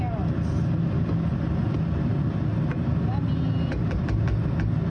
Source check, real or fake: real